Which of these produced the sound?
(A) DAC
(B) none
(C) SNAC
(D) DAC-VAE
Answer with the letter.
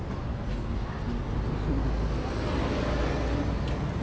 B